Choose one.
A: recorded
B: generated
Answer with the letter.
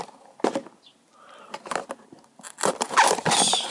A